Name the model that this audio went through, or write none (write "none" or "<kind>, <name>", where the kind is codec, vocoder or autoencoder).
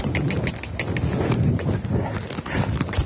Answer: none